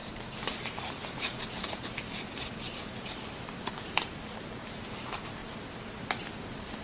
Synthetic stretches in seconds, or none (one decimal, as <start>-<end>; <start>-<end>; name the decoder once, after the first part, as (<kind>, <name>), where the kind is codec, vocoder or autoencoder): 0.0-5.4 (vocoder, BigVGAN v2)